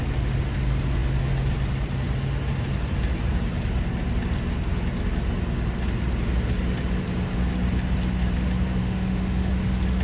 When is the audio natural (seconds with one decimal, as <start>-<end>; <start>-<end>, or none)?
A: 0.0-8.8; 9.5-10.0

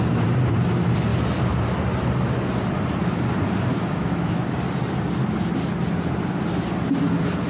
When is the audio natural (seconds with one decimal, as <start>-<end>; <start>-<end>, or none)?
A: 0.0-3.7; 4.4-7.5